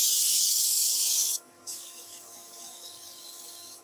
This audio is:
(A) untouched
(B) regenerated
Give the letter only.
B